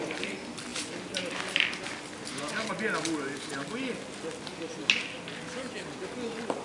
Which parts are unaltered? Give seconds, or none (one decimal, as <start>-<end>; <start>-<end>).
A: 0.0-6.6